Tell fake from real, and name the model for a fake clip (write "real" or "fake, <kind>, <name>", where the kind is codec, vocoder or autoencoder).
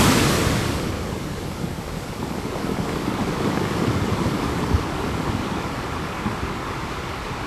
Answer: fake, codec, DAC